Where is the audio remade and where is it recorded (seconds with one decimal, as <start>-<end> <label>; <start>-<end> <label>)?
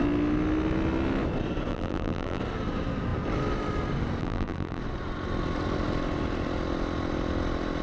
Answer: 0.0-1.7 recorded; 1.7-2.4 remade; 2.4-4.2 recorded; 4.2-4.8 remade; 4.8-7.8 recorded